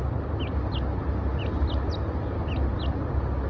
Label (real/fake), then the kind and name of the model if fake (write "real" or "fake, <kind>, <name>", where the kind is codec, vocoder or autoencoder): real